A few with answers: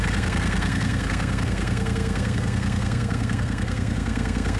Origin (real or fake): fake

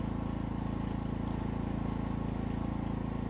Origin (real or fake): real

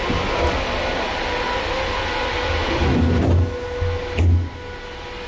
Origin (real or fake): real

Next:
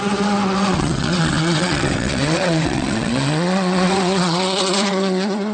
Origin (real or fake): fake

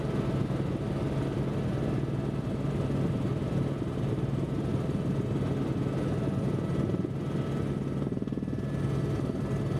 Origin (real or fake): real